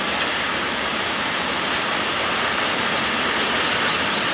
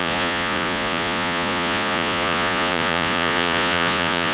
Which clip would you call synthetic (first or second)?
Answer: second